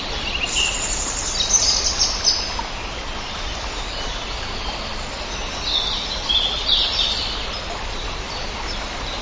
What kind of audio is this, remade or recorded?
recorded